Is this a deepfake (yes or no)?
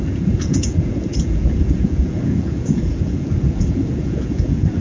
yes